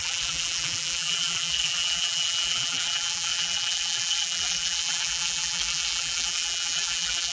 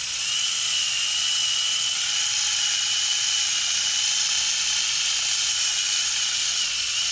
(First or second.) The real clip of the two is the second